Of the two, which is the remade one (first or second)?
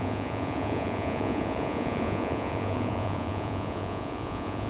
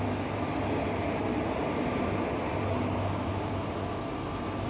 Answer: first